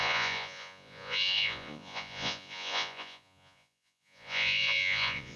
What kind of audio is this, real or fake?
fake